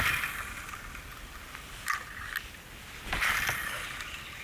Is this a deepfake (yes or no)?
no